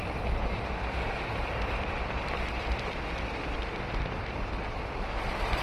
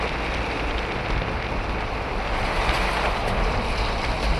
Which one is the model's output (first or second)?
first